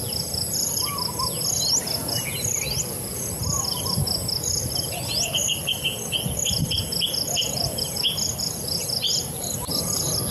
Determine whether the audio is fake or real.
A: real